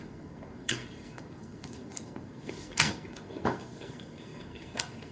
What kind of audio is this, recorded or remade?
remade